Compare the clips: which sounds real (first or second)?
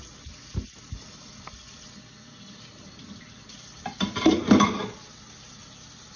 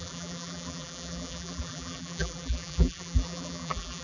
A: first